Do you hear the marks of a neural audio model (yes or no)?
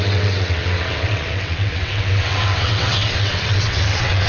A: yes